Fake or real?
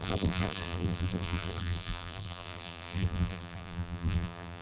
fake